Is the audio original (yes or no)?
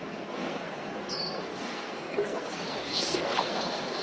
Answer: no